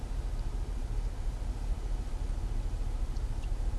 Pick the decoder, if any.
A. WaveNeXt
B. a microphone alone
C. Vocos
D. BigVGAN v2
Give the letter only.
D